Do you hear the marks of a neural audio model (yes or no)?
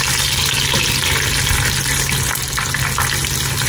no